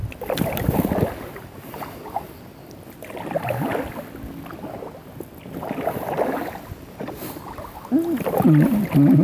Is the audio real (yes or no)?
yes